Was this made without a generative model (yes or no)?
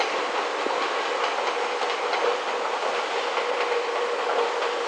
yes